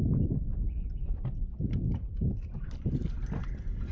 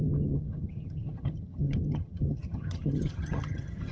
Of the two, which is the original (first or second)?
first